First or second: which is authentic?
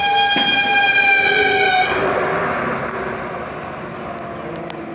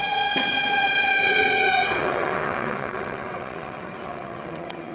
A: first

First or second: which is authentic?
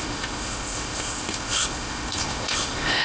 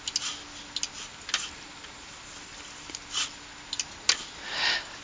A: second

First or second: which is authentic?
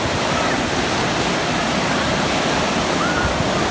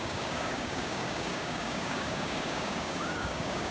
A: first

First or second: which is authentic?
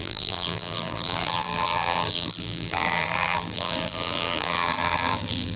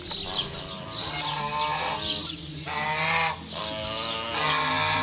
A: second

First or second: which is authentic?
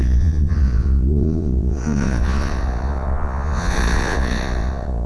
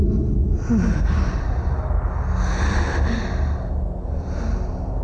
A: second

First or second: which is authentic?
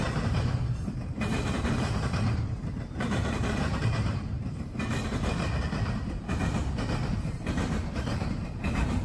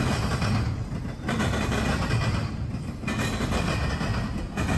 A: second